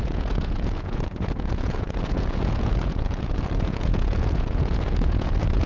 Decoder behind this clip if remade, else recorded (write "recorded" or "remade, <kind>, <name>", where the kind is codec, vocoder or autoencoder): remade, vocoder, Vocos